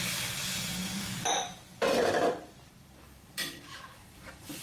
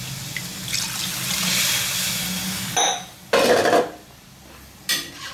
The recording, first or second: second